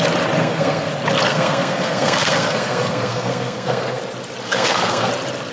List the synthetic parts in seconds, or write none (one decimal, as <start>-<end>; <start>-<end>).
0.4-0.9; 1.3-4.0; 4.4-5.1